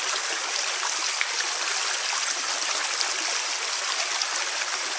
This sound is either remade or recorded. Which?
recorded